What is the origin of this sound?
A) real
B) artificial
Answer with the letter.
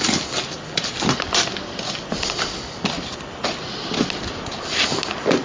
A